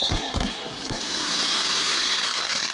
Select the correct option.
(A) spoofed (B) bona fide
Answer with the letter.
A